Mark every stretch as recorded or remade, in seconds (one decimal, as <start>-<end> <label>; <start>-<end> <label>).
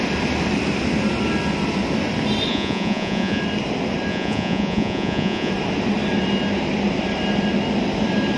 0.0-2.5 recorded; 2.5-3.4 remade; 3.4-4.1 recorded; 4.1-5.5 remade; 5.5-8.4 recorded